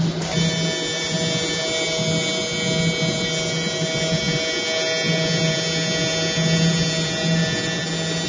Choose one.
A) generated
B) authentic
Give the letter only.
B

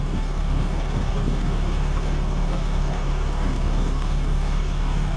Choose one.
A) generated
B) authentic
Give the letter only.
A